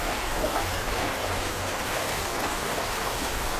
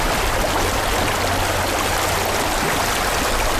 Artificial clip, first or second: first